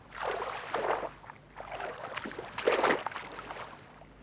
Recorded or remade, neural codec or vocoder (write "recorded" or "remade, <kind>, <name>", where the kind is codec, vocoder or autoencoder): recorded